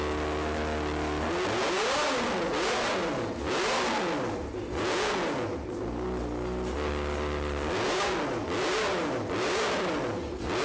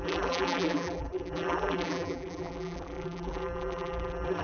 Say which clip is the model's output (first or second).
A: second